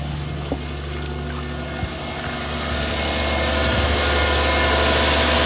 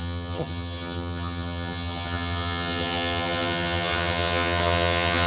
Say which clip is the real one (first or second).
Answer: first